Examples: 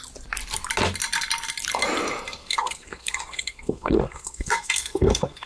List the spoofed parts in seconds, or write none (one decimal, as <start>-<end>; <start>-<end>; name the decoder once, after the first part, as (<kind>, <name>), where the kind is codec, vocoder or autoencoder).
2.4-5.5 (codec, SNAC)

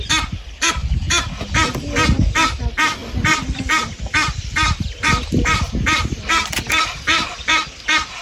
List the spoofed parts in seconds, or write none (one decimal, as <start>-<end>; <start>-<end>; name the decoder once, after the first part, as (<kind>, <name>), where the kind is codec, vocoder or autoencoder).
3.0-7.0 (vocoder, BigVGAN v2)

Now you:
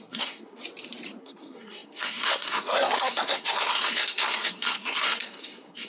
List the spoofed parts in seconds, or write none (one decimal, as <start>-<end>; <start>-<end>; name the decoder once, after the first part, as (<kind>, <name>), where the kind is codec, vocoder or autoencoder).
0.0-0.6 (codec, SNAC); 1.2-5.9